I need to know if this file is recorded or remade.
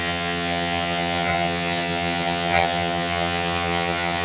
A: remade